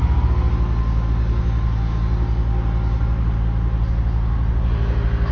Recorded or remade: recorded